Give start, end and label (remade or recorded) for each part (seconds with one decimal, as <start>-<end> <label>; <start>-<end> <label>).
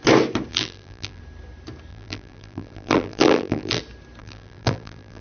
0.0-0.5 recorded; 0.5-1.2 remade; 1.2-1.9 recorded; 1.9-3.8 remade; 3.8-4.2 recorded; 4.2-5.2 remade